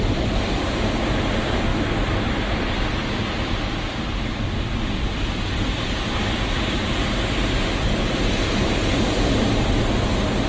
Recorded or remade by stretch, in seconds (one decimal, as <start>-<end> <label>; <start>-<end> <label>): 0.0-10.5 recorded